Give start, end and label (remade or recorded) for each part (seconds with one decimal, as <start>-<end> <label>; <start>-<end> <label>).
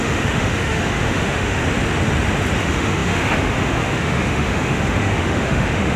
0.0-1.6 remade; 1.6-2.6 recorded; 2.6-6.0 remade